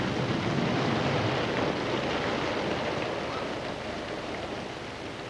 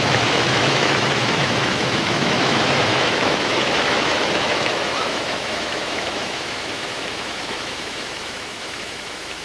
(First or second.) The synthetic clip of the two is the second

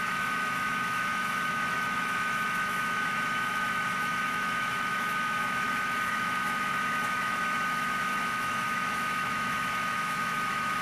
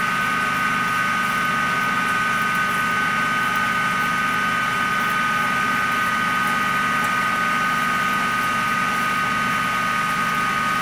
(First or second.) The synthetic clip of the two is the first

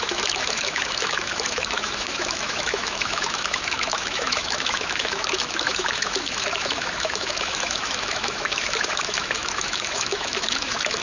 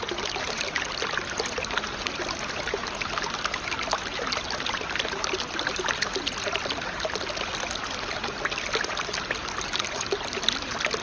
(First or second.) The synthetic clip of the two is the first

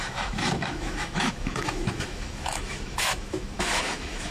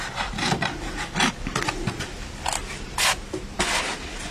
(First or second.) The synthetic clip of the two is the first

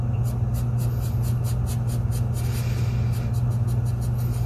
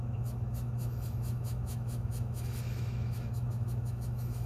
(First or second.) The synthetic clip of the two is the second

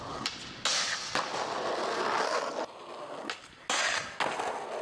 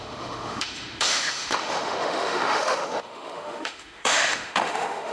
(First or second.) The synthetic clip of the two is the second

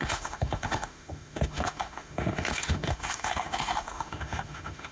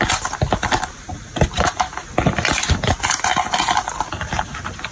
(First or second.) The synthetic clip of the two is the first